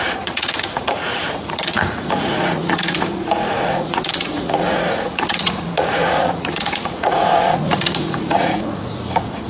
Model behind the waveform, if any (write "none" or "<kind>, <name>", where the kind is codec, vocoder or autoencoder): vocoder, Vocos